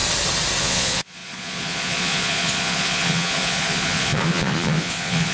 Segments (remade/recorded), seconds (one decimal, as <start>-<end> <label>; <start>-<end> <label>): 0.0-0.6 recorded; 0.6-5.3 remade